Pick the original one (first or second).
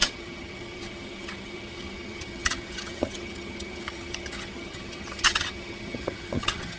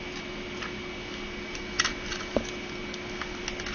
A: second